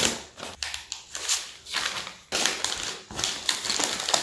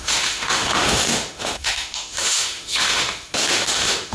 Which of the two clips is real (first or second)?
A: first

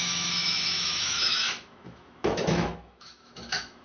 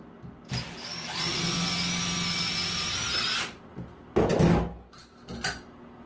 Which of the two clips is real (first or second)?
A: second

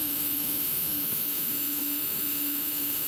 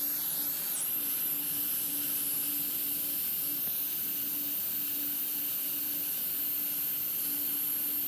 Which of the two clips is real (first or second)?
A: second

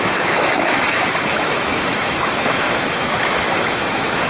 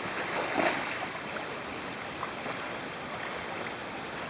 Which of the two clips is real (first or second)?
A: second